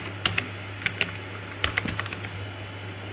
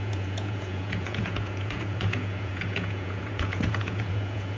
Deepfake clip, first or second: second